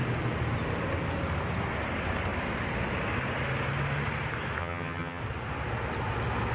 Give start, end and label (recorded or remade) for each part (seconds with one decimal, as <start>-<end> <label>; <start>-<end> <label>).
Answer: 0.0-4.6 recorded; 4.6-5.2 remade; 5.2-6.5 recorded